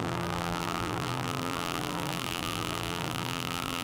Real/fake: fake